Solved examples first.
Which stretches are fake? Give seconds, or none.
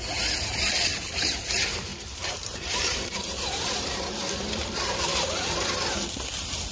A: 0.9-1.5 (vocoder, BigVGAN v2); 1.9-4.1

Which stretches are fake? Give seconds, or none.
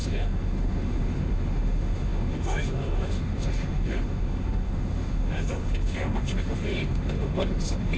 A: 0.0-8.0 (autoencoder, DAC-VAE)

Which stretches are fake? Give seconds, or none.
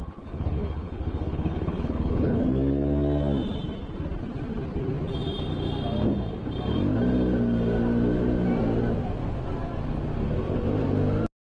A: 0.0-2.4 (codec, HILCodec)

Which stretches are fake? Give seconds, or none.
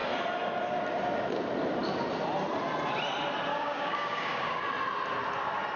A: 3.5-4.6 (codec, DAC)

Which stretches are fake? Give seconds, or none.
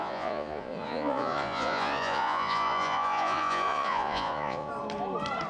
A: 0.0-4.7 (vocoder, Vocos)